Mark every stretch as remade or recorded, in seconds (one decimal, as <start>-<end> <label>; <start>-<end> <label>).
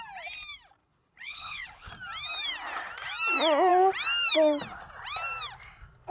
0.0-0.8 recorded; 0.8-1.9 remade; 1.9-6.1 recorded